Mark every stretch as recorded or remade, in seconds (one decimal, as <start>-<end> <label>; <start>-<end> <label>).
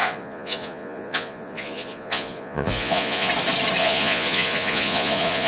0.0-3.3 remade; 3.3-3.8 recorded; 3.8-5.5 remade